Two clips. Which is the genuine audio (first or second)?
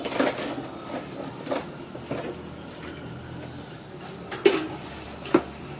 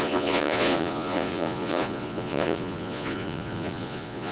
first